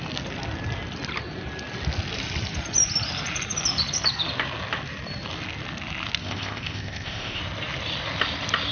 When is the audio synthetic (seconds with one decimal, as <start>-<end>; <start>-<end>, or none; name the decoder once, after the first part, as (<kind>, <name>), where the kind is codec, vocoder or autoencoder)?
6.2-7.4 (codec, ZipCodec)